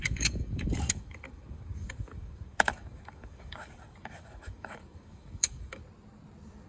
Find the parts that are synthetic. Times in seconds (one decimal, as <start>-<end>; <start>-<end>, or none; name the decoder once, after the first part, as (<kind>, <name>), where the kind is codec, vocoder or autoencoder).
0.0-5.8 (codec, DAC)